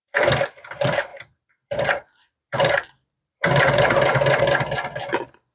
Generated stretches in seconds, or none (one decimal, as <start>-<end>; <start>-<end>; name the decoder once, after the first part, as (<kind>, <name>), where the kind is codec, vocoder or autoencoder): none